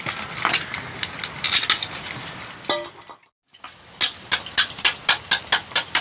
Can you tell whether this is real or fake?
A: real